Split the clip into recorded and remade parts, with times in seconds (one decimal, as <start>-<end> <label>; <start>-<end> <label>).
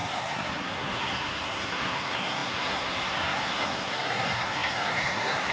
0.0-5.5 remade